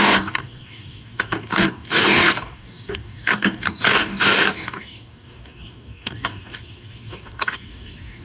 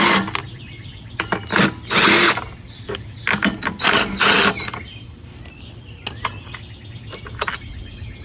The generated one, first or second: first